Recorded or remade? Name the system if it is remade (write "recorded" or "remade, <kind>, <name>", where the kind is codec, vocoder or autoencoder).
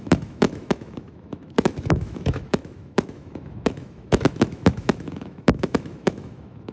remade, autoencoder, DAC-VAE